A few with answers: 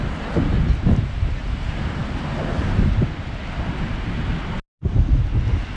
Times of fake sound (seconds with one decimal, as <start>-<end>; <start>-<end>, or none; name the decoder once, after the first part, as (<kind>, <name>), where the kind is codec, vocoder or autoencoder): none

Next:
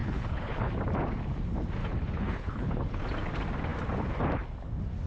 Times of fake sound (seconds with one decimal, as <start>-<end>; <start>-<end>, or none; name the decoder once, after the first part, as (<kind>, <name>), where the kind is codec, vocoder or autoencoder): 0.0-0.7 (codec, HILCodec); 1.8-3.0

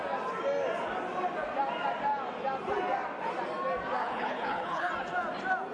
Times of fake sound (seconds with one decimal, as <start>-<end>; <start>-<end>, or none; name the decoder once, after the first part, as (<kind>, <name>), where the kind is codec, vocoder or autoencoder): 4.0-4.9 (codec, HILCodec)